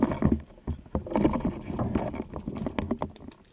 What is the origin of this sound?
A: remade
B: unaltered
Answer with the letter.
B